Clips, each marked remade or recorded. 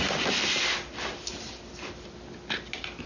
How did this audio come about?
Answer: recorded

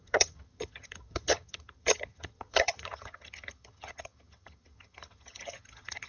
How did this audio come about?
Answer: remade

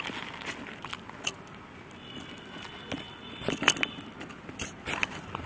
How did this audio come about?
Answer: recorded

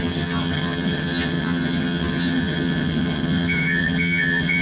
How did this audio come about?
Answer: remade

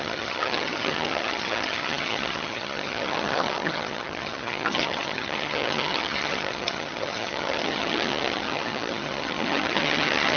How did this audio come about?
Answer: remade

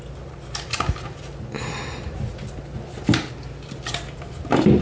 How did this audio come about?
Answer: recorded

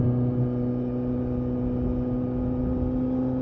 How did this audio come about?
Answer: recorded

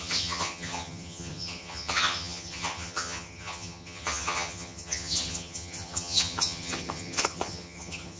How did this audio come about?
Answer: remade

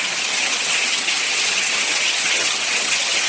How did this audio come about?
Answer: remade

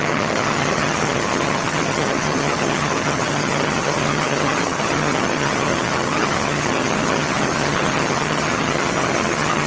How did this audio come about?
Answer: remade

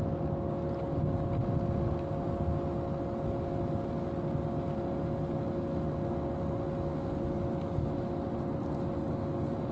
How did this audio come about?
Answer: recorded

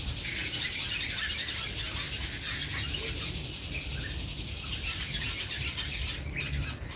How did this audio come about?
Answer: recorded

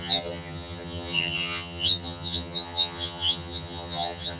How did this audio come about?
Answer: remade